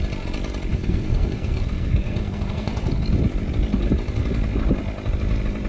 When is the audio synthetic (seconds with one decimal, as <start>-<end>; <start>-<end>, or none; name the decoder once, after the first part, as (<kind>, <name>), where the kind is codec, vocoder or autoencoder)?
0.7-2.9 (codec, SNAC)